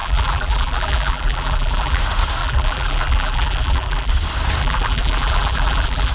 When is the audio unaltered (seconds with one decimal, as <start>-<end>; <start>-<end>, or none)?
2.0-2.4; 4.1-4.6